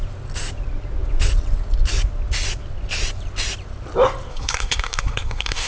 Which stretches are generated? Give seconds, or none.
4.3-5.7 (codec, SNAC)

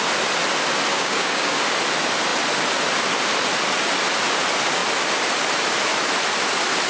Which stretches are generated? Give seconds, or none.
0.9-1.6 (codec, DAC)